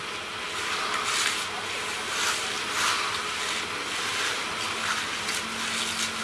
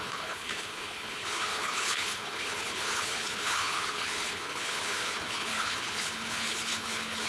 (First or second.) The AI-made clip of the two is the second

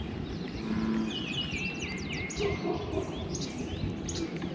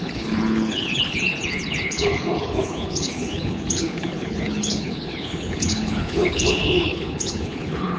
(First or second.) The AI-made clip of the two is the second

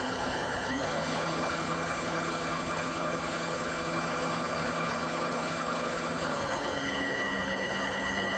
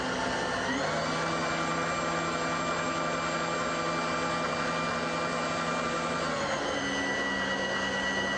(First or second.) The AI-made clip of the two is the first